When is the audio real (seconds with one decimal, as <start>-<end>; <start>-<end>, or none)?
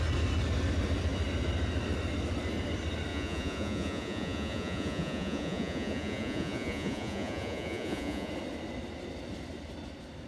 0.0-3.1; 8.3-10.3